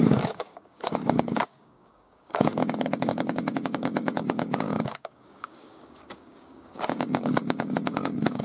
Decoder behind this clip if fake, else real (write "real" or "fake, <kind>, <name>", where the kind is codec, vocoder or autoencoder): fake, codec, DAC